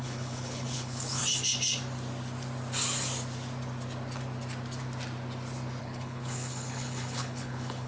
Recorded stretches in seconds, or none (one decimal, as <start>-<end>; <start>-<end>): 1.2-5.8